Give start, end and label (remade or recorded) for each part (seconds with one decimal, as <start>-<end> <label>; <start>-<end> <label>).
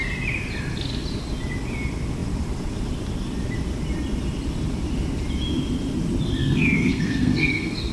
0.0-6.4 recorded; 6.4-7.9 remade